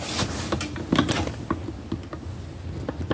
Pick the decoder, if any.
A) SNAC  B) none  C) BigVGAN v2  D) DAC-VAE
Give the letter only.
B